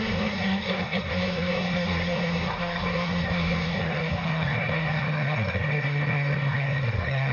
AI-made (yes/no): yes